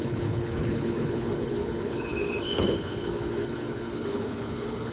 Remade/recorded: remade